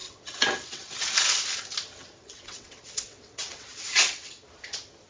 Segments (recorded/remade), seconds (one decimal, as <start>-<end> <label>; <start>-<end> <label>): 0.0-0.8 remade; 0.8-2.2 recorded; 2.2-4.3 remade; 4.3-5.1 recorded